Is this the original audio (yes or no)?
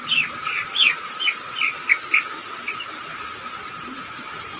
yes